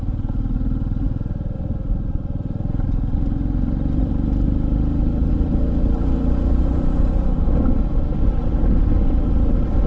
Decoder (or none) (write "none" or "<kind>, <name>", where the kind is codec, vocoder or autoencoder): none